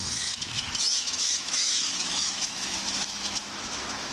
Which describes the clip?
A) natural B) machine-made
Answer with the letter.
B